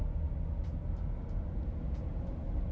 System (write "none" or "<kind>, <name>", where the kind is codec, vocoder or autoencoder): none